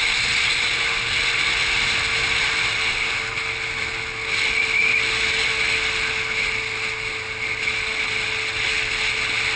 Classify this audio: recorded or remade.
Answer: recorded